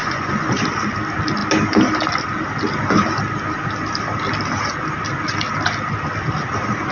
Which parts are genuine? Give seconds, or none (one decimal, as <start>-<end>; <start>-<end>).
0.5-6.9